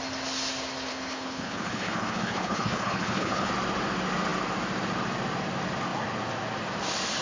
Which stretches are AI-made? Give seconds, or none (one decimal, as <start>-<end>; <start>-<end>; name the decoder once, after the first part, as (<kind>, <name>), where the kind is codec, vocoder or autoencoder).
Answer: 0.9-3.5 (codec, HILCodec)